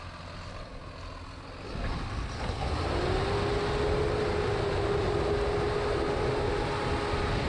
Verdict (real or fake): real